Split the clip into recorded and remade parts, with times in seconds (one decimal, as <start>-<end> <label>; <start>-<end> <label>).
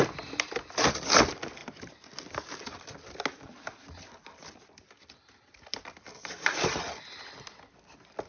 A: 0.0-8.3 recorded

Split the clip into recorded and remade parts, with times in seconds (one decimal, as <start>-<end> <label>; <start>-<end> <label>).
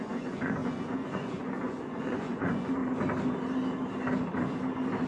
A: 0.0-2.8 remade; 2.8-5.1 recorded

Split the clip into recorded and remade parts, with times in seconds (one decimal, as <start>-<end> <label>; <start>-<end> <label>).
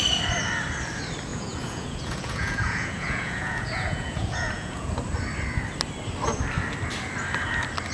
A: 0.0-1.3 recorded; 1.3-4.9 remade; 4.9-7.9 recorded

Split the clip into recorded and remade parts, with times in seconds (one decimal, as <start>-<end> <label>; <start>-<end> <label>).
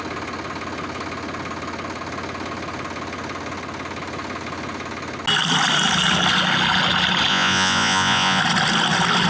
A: 0.0-7.3 recorded; 7.3-8.4 remade; 8.4-9.3 recorded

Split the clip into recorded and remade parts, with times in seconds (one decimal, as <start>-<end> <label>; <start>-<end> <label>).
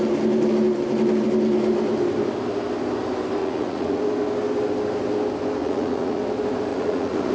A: 0.0-3.4 recorded; 3.4-4.0 remade; 4.0-5.6 recorded; 5.6-6.2 remade; 6.2-6.7 recorded; 6.7-7.3 remade